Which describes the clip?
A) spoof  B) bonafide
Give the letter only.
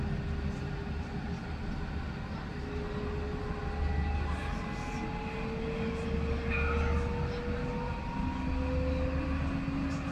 B